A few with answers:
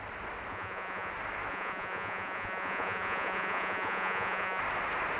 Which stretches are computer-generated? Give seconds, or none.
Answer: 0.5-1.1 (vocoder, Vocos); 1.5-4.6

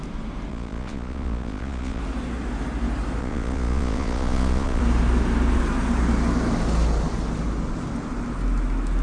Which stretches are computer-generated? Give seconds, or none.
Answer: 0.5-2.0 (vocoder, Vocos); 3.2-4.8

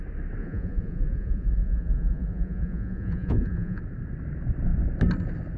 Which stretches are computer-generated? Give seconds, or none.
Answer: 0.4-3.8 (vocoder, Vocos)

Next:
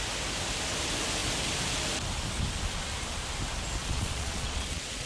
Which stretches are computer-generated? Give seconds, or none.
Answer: 3.8-5.1 (vocoder, Vocos)

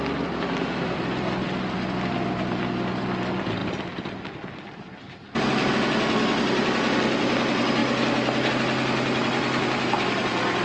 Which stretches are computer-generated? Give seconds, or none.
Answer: none

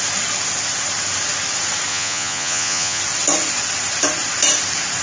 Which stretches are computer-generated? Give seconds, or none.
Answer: 1.9-3.0 (vocoder, Vocos)

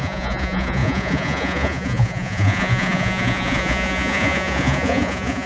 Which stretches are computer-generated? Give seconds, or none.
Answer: 0.0-5.5 (vocoder, Vocos)